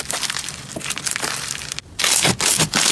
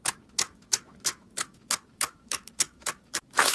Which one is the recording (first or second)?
first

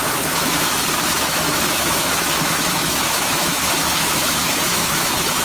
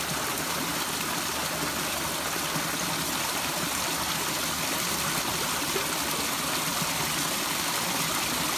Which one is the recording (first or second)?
second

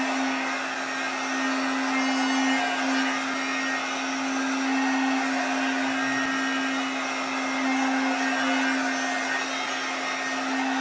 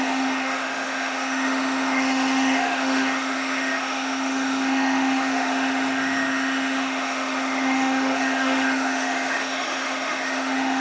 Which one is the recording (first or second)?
first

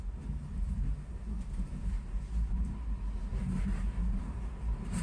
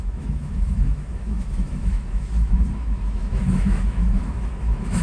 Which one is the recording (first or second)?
first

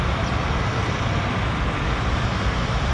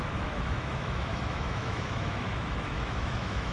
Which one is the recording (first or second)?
first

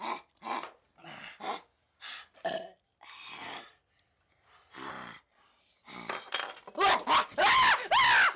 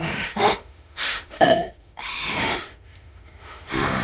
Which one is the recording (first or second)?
first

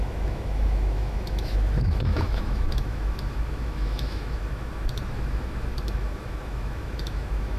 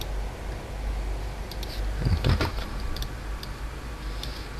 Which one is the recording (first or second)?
second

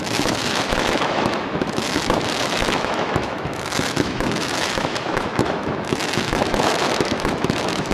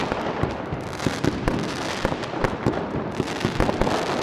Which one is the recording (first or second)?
second